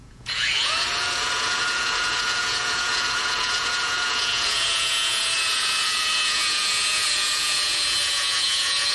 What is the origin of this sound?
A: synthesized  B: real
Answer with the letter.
A